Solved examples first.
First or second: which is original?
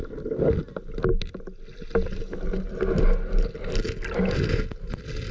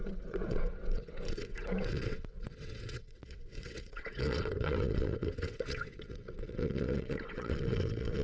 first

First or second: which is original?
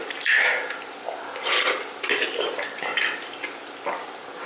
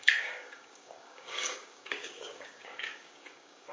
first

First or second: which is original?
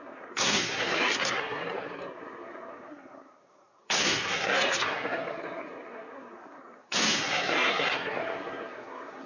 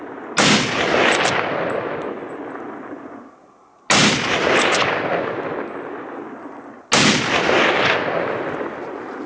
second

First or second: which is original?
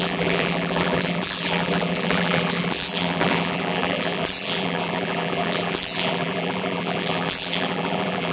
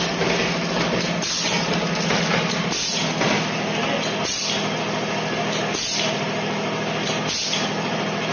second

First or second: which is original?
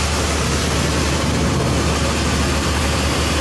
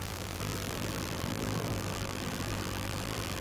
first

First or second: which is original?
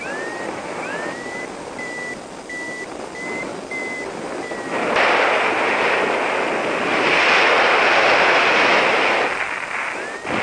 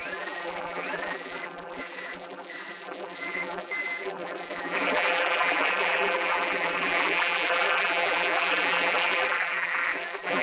first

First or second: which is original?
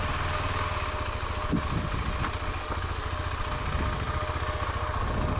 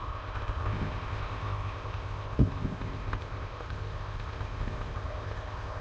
first